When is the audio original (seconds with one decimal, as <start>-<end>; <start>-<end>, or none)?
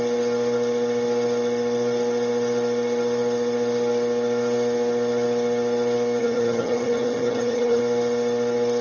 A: 0.0-6.2; 7.8-8.8